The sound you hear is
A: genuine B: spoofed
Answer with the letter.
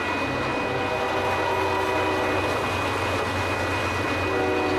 A